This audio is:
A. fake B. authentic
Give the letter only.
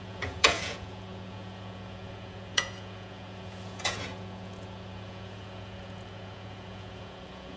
A